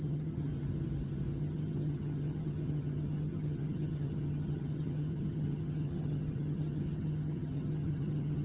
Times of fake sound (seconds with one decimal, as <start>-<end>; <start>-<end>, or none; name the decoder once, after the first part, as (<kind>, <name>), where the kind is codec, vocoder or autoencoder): 0.0-0.5 (vocoder, HiFi-GAN); 1.4-8.4